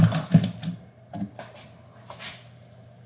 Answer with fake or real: real